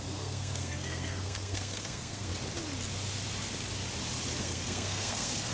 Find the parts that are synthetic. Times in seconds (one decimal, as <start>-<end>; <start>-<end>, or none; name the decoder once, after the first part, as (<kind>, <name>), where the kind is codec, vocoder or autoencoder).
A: 0.0-2.3 (codec, SNAC); 4.4-5.5